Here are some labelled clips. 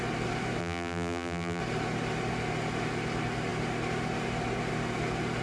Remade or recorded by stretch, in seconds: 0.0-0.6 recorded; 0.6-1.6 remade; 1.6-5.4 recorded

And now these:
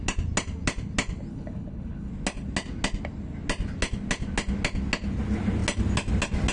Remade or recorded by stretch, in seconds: 0.0-1.3 recorded; 1.3-2.1 remade; 2.1-6.5 recorded

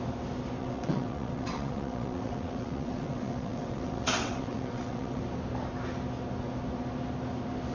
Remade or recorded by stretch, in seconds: 0.0-0.6 recorded; 0.6-5.2 remade; 5.2-7.7 recorded